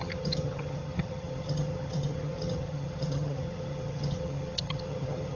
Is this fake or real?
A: fake